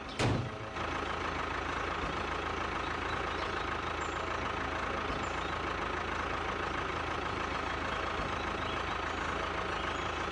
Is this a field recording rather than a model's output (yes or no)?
yes